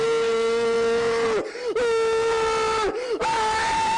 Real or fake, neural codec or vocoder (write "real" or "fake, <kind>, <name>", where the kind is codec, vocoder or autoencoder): real